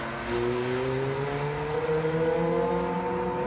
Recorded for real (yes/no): yes